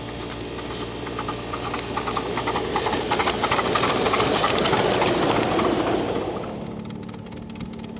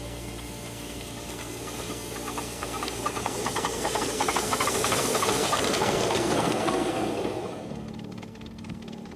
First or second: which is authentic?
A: first